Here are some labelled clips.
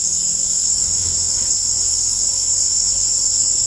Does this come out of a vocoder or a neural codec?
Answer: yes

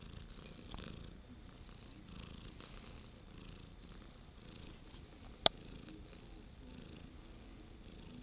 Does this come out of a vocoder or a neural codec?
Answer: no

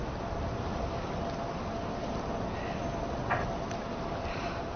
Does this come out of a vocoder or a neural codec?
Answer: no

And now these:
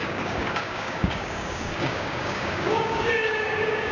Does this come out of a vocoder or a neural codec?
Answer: yes